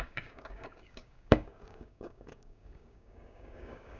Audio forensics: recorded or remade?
remade